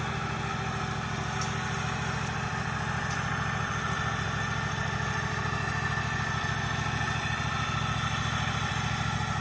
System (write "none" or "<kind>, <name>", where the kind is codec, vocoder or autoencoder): none